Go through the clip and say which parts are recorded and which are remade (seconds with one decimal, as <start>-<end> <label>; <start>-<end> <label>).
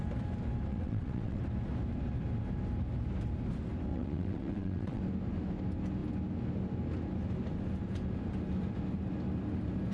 0.0-0.7 recorded; 0.7-1.4 remade; 1.4-3.9 recorded; 3.9-5.0 remade; 5.0-9.9 recorded